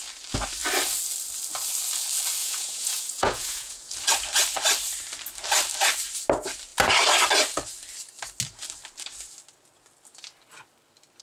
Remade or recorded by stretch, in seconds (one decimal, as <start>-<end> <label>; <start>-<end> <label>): 0.0-2.4 recorded; 2.4-3.9 remade; 3.9-11.2 recorded

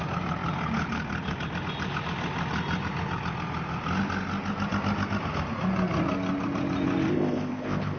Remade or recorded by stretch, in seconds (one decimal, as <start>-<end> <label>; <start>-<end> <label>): 0.0-7.1 recorded; 7.1-8.0 remade

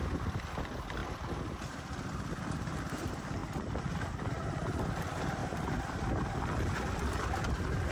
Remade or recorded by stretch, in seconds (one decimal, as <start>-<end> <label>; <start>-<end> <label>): 0.0-1.0 remade; 1.0-2.4 recorded; 2.4-3.4 remade; 3.4-5.0 recorded; 5.0-5.4 remade; 5.4-6.9 recorded; 6.9-7.9 remade

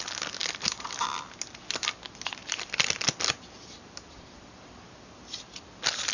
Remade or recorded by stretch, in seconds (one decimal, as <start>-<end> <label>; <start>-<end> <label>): 0.0-0.4 recorded; 0.4-1.0 remade; 1.0-2.4 recorded; 2.4-5.6 remade; 5.6-6.1 recorded

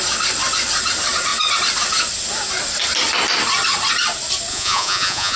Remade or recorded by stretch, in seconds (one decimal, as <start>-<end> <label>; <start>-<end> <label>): 0.0-4.5 recorded; 4.5-5.4 remade

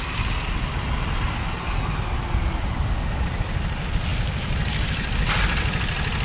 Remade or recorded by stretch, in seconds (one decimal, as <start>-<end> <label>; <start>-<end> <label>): 0.0-6.2 recorded

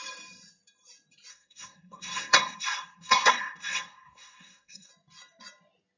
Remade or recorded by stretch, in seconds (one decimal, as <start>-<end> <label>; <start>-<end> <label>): 0.0-1.3 recorded; 1.3-4.9 remade; 4.9-6.0 recorded

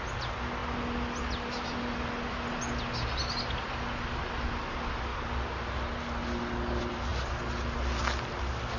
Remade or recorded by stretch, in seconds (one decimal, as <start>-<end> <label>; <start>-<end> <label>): 0.0-8.8 recorded